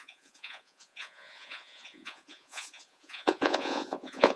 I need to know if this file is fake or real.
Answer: fake